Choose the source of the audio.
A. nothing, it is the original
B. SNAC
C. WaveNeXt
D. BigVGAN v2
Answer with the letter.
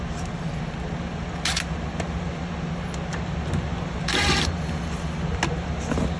A